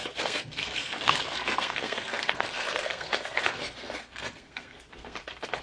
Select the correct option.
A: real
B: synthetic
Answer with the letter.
B